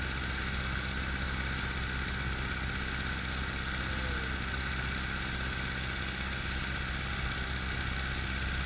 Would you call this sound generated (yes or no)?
no